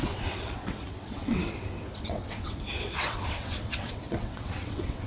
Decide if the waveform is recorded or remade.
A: remade